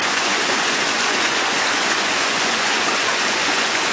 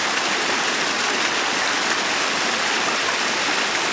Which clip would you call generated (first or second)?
first